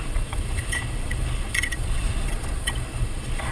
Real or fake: fake